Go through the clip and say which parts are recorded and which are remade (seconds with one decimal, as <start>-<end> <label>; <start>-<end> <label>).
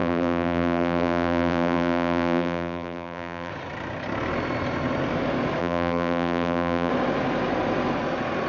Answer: 0.0-3.5 remade; 3.5-5.6 recorded; 5.6-6.9 remade; 6.9-8.5 recorded